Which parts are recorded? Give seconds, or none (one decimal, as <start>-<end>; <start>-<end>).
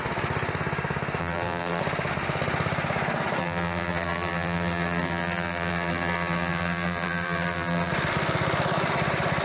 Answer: 0.0-1.2; 1.8-3.4; 7.9-9.4